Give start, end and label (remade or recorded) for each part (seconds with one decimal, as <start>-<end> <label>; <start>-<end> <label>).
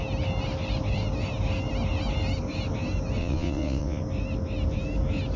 0.0-3.2 recorded; 3.2-4.0 remade; 4.0-5.4 recorded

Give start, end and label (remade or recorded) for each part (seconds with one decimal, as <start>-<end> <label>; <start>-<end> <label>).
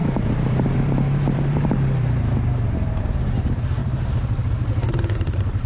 0.0-3.8 remade; 3.8-4.5 recorded; 4.5-5.7 remade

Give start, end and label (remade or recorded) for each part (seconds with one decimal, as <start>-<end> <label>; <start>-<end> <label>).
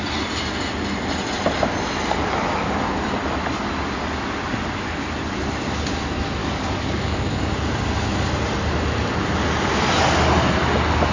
0.0-6.4 recorded; 6.4-7.5 remade; 7.5-11.1 recorded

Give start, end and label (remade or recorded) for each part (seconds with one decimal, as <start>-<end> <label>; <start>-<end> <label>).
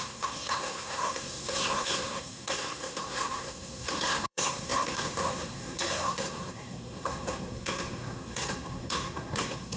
0.0-9.8 remade